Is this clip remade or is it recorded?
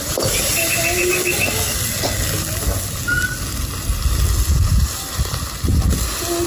recorded